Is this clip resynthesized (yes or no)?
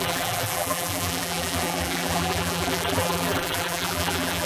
yes